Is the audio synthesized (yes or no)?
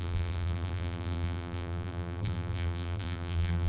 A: yes